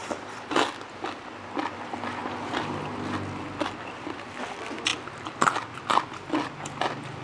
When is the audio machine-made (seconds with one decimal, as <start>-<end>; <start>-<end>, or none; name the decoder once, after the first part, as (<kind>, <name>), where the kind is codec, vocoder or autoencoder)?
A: 0.0-0.8 (vocoder, BigVGAN v2)